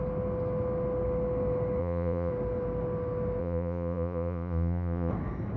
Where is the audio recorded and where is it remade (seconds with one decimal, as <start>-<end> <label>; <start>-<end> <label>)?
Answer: 0.0-1.8 recorded; 1.8-2.3 remade; 2.3-3.4 recorded; 3.4-5.1 remade; 5.1-5.6 recorded